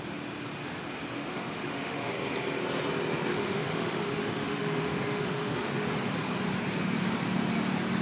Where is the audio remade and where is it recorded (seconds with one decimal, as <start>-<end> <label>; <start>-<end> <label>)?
0.0-1.1 recorded; 1.1-2.1 remade; 2.1-3.3 recorded; 3.3-5.9 remade; 5.9-8.0 recorded